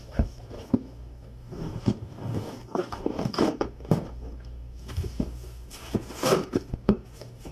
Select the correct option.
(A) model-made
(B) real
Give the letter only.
A